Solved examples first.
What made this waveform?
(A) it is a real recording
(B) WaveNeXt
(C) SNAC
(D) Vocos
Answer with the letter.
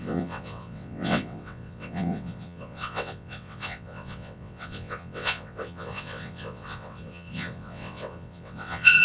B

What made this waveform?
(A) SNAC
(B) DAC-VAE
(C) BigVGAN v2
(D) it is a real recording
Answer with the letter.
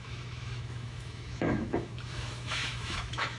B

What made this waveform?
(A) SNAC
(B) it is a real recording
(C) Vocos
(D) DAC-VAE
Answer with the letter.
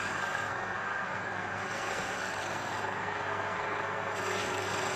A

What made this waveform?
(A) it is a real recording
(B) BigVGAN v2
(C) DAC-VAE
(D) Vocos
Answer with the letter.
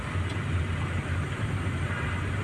A